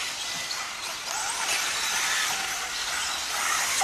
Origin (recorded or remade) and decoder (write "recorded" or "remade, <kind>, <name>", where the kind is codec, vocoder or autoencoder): recorded